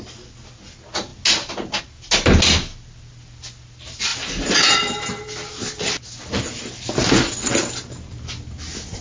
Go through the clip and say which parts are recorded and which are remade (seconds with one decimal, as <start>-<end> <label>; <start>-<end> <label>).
0.0-9.0 recorded

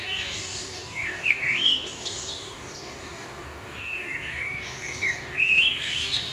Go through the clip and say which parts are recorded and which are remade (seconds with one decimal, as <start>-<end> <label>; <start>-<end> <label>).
0.0-6.3 remade

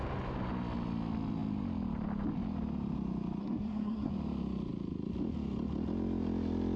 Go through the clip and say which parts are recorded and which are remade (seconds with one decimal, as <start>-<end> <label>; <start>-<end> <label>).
0.0-3.4 recorded; 3.4-4.1 remade; 4.1-6.8 recorded